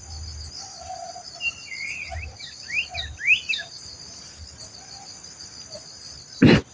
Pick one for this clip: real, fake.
real